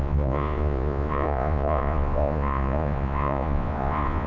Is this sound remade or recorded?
remade